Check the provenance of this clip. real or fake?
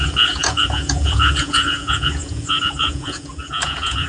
fake